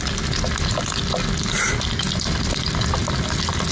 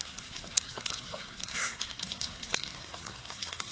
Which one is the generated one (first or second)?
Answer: second